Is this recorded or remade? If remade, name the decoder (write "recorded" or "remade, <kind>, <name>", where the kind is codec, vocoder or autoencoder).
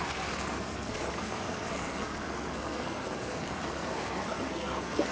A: remade, codec, SNAC